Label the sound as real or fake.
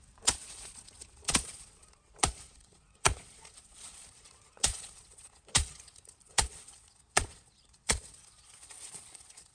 fake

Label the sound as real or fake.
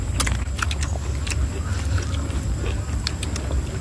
real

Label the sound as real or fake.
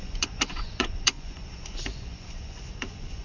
fake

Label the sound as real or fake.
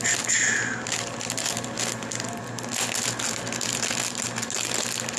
real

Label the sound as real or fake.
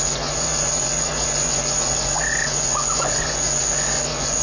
fake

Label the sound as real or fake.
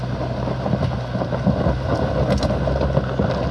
real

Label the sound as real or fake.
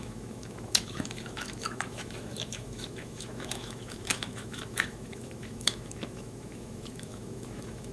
fake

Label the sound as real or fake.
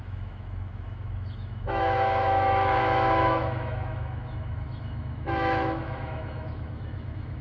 fake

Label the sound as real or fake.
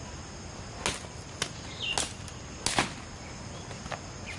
real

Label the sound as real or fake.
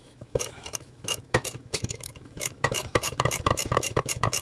fake